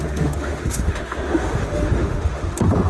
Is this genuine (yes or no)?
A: no